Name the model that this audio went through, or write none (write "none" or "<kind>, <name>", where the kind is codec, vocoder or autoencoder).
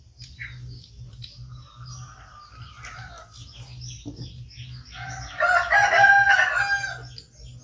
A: none